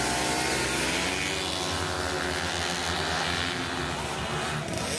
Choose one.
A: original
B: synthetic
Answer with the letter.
A